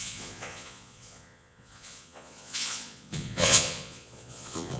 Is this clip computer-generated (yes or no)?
yes